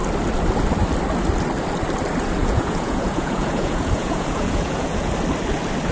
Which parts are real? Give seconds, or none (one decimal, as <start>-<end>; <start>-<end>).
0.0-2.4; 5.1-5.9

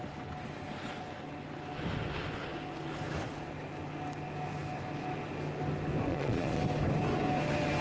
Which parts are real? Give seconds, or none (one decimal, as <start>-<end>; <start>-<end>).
0.0-6.1; 6.6-7.8

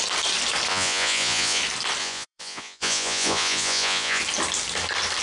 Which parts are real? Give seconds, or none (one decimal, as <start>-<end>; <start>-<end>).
0.0-0.7; 1.6-2.0; 4.2-5.2

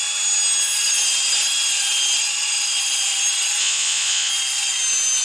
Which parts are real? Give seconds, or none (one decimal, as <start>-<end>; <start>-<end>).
0.0-3.6; 4.3-5.2

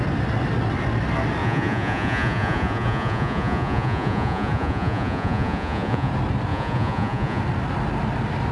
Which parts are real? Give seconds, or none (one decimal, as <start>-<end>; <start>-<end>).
0.0-1.4; 6.1-6.5; 7.4-8.5

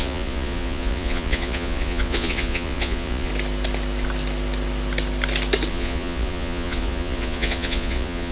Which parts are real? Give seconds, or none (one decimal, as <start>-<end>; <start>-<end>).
3.3-5.7

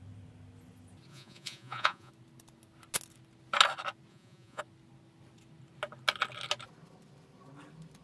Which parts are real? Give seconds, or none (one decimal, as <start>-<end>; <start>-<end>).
0.0-1.1; 2.1-4.1; 4.6-8.0